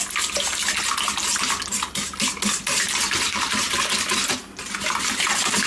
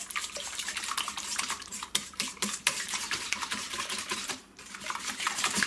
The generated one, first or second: second